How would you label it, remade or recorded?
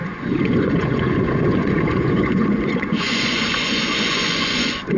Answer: remade